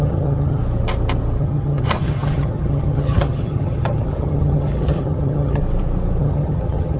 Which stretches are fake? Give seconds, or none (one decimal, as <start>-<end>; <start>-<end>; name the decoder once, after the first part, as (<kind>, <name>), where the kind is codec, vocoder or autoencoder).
0.0-0.6 (vocoder, HiFi-GAN); 1.4-5.6; 6.2-7.0